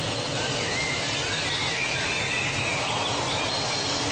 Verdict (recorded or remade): recorded